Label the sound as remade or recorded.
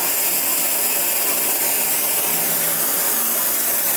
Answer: recorded